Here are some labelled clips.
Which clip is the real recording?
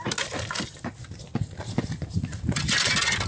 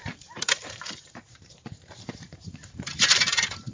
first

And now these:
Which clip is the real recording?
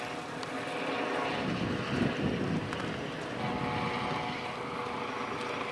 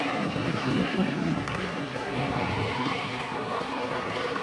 first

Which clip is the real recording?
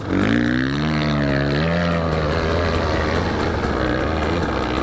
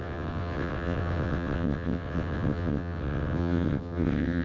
first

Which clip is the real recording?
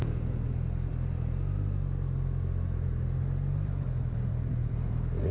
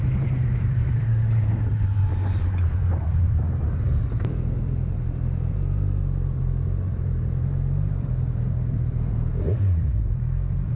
first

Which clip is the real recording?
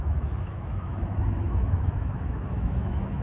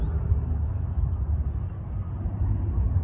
second